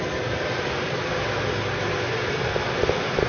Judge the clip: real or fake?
real